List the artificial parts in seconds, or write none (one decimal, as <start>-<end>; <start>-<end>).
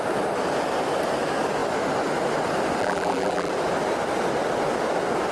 2.8-3.5